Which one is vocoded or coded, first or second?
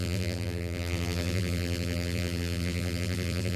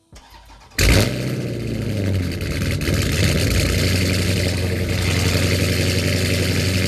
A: first